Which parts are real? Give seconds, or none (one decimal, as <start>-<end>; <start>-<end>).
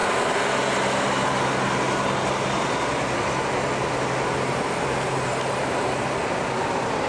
0.0-7.1